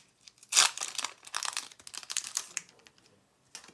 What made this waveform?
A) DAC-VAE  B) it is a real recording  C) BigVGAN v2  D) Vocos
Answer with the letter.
B